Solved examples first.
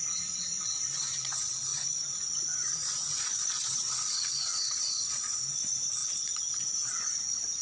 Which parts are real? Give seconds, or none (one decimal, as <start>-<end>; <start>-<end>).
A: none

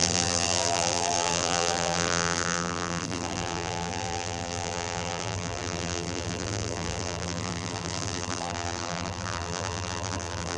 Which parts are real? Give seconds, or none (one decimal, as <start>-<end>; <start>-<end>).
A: none

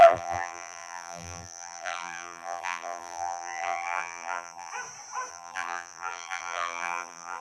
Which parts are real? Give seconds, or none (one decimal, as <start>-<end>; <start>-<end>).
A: 4.7-5.3

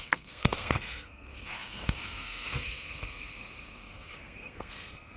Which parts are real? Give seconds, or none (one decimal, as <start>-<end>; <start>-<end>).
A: none

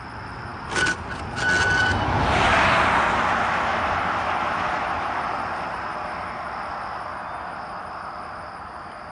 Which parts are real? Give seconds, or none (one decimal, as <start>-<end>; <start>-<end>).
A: 0.0-9.1

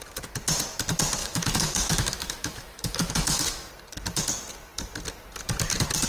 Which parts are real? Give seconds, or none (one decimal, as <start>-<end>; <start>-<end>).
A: 0.0-1.2; 3.7-6.1

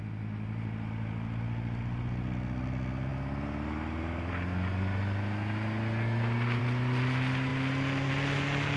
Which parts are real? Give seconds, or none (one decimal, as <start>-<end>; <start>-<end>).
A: 0.0-8.8